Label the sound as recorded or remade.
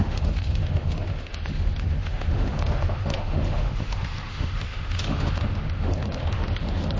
remade